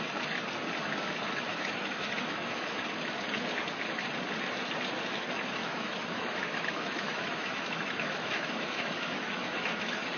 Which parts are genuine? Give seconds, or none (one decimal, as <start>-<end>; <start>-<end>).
0.0-1.5; 2.8-5.6